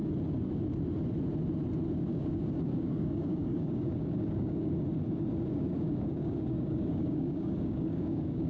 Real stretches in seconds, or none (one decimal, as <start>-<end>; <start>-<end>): 0.0-2.1; 4.7-5.5